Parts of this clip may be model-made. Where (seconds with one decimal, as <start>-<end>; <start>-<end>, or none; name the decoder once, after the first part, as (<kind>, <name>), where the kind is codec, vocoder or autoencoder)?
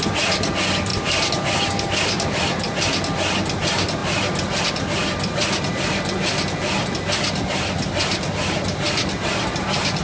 0.9-2.4 (vocoder, BigVGAN v2); 4.0-4.6